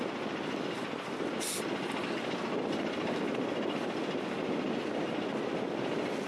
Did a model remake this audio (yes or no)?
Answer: no